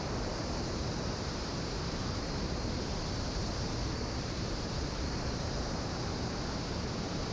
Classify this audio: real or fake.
fake